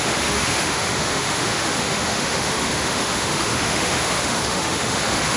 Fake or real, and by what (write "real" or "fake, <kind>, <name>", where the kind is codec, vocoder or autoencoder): fake, autoencoder, DAC-VAE